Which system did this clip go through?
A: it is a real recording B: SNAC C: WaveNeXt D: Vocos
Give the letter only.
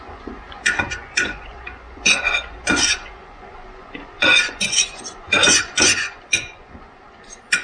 D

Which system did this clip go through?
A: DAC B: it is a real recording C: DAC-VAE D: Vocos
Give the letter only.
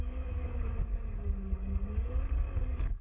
A